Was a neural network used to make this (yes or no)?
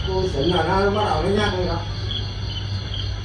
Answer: no